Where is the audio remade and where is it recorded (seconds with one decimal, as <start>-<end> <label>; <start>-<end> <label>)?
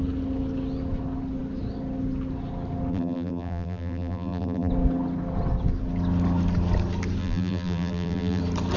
0.0-2.9 recorded; 2.9-4.7 remade; 4.7-7.2 recorded; 7.2-8.4 remade; 8.4-8.8 recorded